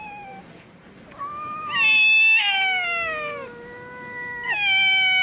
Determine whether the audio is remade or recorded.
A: recorded